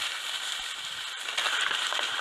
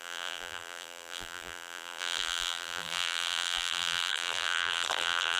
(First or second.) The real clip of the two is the first